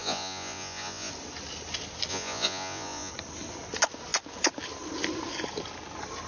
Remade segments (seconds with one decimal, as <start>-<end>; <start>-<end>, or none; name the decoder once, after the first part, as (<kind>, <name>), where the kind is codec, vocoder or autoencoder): 0.0-1.1 (vocoder, Vocos); 2.1-3.1